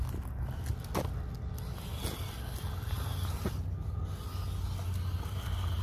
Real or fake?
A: real